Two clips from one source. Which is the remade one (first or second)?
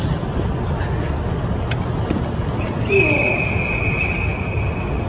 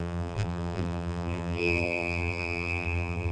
second